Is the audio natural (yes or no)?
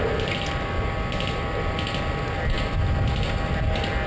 yes